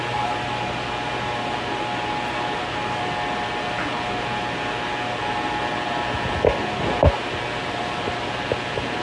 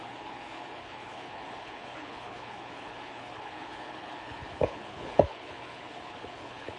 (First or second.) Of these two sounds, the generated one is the second